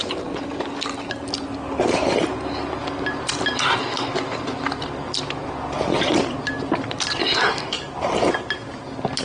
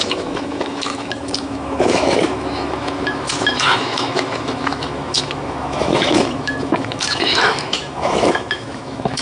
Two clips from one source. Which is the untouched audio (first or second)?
first